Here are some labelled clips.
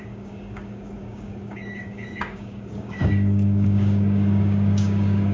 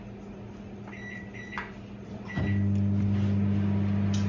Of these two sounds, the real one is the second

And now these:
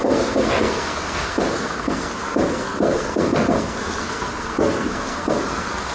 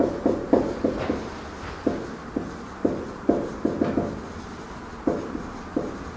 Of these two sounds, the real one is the second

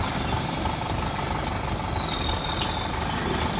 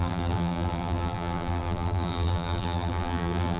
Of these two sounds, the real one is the first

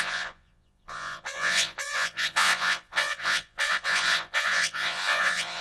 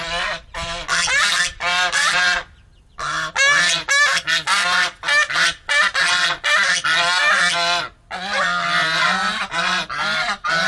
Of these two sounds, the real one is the second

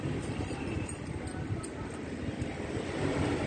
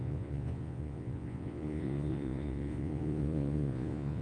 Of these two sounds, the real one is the first